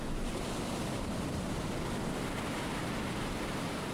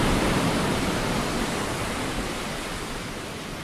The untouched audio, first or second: first